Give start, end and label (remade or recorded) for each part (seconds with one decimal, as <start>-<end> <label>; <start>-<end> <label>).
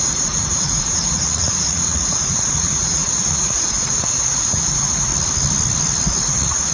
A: 0.0-5.1 remade; 5.1-6.3 recorded; 6.3-6.7 remade